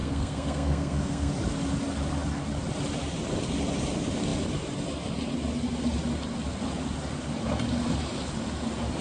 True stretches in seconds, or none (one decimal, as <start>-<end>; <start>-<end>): 1.3-9.0